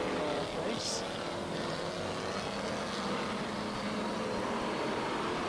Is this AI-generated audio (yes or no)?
no